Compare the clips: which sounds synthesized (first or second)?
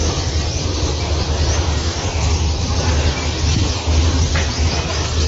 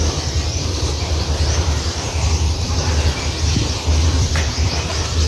second